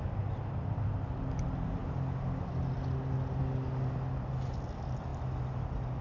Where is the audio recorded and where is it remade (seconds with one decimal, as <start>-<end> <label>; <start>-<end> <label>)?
0.0-6.0 recorded